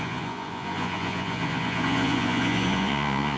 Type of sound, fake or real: fake